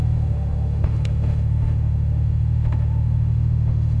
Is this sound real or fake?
fake